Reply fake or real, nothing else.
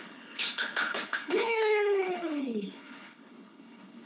fake